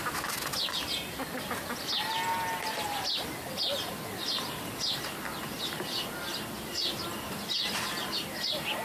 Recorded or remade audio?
recorded